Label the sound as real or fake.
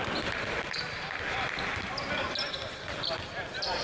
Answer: real